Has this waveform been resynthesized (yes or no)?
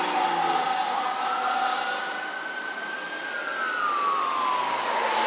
no